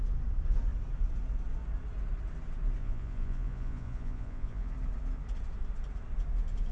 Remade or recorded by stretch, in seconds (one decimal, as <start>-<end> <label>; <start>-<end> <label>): 0.0-2.8 recorded; 2.8-4.7 remade; 4.7-6.7 recorded